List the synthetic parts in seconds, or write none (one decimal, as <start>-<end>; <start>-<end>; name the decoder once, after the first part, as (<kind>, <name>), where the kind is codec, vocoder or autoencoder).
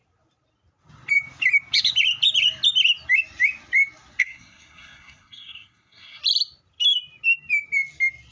4.2-6.2 (codec, SNAC)